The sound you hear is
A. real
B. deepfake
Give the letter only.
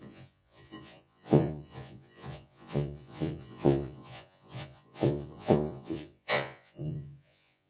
B